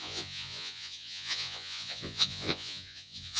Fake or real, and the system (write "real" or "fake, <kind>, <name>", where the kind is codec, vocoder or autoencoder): fake, vocoder, Vocos